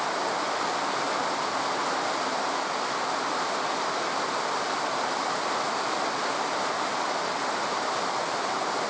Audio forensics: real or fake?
real